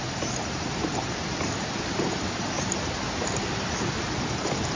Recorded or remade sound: recorded